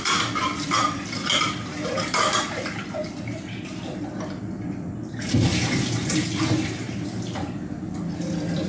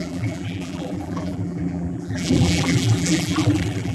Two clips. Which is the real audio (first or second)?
first